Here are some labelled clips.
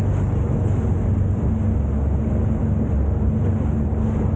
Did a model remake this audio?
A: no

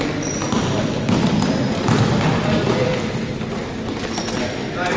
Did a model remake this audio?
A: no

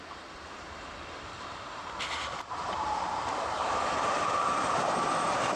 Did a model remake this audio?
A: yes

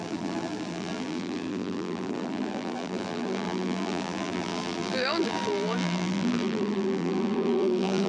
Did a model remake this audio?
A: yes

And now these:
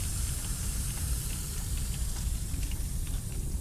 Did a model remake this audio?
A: yes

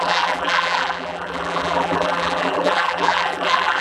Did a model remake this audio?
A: yes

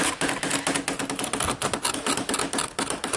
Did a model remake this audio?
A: no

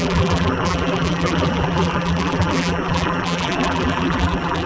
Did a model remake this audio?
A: yes